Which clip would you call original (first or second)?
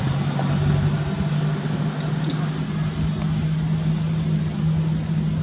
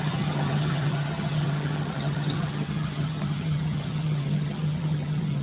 first